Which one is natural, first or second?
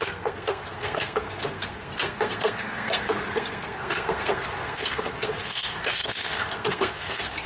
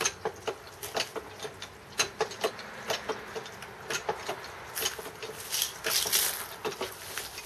second